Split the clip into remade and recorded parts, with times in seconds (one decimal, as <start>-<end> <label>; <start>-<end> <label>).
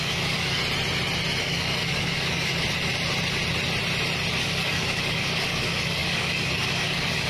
0.0-0.6 remade; 0.6-1.4 recorded; 1.4-2.5 remade; 2.5-4.4 recorded; 4.4-7.3 remade